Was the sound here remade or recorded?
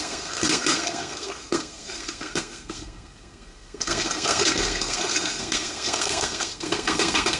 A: remade